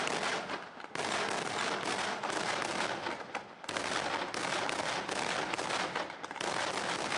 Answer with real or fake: real